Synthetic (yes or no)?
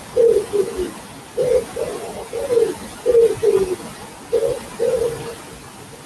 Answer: no